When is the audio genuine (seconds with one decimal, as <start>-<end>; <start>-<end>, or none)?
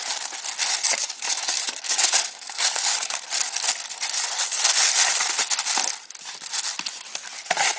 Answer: 0.0-0.9; 3.3-7.8